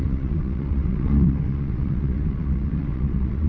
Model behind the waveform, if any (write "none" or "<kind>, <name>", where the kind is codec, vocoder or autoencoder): vocoder, WaveNeXt